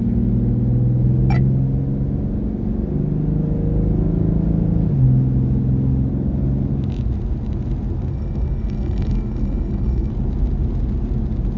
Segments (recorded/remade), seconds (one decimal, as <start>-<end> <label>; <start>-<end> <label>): 0.0-8.1 recorded; 8.1-10.1 remade; 10.1-11.6 recorded